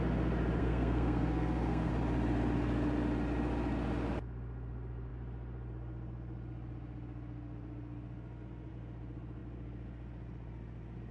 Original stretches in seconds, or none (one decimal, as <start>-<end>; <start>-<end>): 0.0-0.6; 1.9-11.1